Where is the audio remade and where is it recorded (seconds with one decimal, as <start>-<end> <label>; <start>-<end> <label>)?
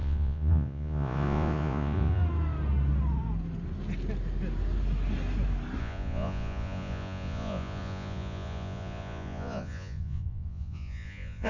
0.0-2.2 remade; 2.2-5.8 recorded; 5.8-11.5 remade